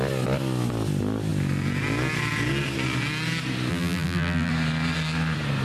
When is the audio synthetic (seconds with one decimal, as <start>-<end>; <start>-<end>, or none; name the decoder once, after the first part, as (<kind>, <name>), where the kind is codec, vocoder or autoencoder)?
3.7-4.5 (vocoder, BigVGAN v2)